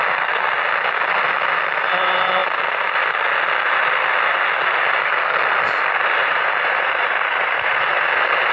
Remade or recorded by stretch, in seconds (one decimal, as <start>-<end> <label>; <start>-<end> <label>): 0.0-6.2 recorded; 6.2-8.1 remade; 8.1-8.5 recorded